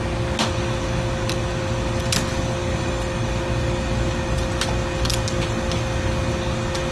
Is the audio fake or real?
real